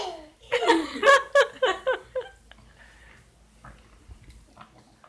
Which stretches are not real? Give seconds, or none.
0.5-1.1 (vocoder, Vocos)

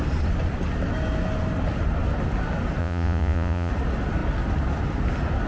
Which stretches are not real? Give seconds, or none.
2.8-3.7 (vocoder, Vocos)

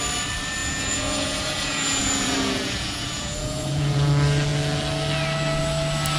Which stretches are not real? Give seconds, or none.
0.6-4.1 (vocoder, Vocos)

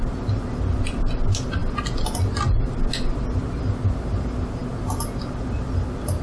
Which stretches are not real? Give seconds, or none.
none

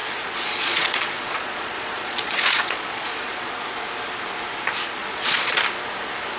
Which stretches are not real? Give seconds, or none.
0.0-3.5 (vocoder, Vocos); 5.0-5.6